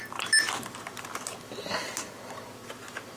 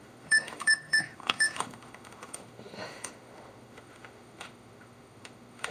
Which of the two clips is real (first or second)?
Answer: first